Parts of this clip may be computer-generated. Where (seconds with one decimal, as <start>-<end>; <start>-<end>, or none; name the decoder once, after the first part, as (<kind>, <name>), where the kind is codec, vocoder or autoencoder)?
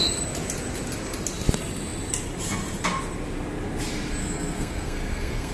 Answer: 4.2-5.5 (codec, SNAC)